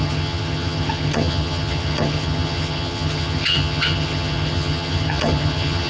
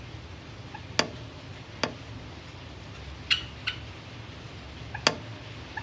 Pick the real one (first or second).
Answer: second